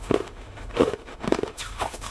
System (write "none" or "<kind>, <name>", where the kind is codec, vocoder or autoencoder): autoencoder, DAC-VAE